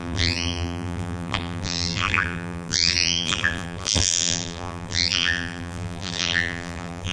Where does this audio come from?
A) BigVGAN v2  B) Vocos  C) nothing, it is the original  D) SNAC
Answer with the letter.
A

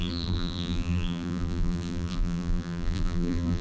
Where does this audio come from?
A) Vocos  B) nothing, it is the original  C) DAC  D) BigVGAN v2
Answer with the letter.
D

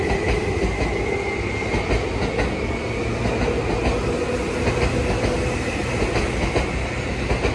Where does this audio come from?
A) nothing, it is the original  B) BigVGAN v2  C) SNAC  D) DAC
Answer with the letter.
A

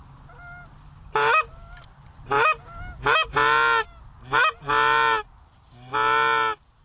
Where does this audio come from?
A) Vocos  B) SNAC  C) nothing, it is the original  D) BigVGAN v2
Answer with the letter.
C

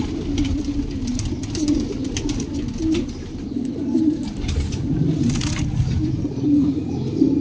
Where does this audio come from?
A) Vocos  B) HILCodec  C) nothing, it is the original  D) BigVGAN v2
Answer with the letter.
C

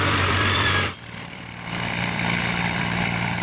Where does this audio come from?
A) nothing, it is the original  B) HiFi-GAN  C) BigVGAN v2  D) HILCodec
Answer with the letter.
C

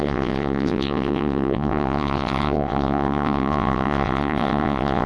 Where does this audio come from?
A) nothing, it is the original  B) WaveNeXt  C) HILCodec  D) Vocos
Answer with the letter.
B